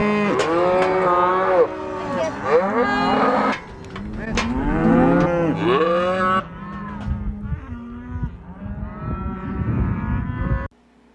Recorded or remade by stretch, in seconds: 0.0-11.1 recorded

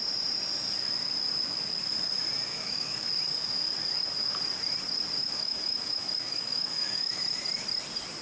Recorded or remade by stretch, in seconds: 0.0-2.5 recorded; 2.5-3.1 remade; 3.1-5.2 recorded; 5.2-7.2 remade; 7.2-8.2 recorded

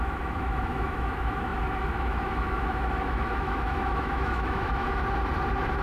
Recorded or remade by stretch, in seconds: 0.0-5.0 remade; 5.0-5.8 recorded

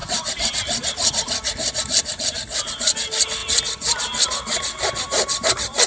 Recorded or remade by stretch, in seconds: 0.0-5.9 recorded

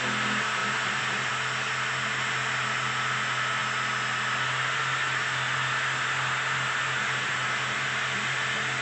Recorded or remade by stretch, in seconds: 0.0-8.8 recorded

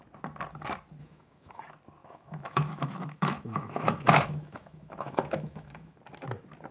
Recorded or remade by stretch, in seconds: 0.0-1.0 recorded; 1.0-1.6 remade; 1.6-2.0 recorded; 2.0-6.0 remade; 6.0-6.7 recorded